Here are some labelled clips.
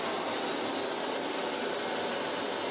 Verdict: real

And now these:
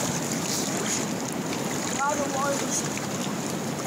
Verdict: real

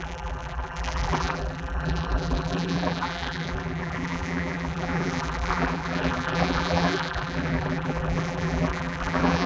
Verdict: fake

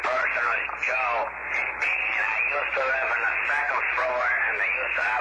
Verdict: fake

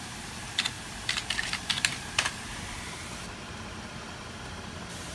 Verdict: fake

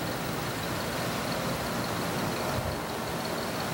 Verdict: real